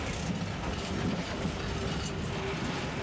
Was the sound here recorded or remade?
recorded